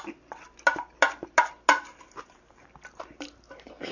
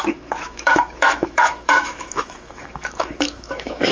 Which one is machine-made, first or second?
second